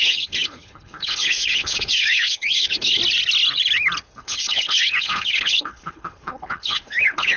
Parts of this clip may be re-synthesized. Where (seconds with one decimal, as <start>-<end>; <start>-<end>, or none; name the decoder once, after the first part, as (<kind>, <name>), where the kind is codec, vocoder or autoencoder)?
0.0-3.0 (codec, HILCodec); 4.2-7.4